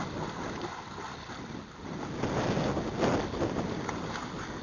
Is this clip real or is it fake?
real